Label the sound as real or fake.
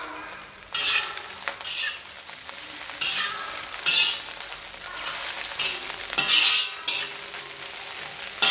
real